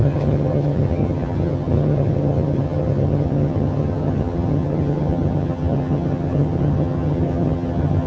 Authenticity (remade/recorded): remade